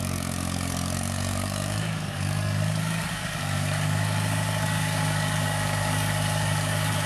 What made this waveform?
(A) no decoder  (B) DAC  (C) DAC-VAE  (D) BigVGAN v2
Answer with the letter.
B